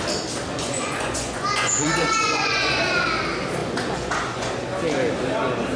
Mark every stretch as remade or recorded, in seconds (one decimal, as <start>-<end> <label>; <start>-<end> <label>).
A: 0.0-0.6 recorded; 0.6-2.8 remade; 2.8-3.6 recorded; 3.6-4.5 remade; 4.5-5.8 recorded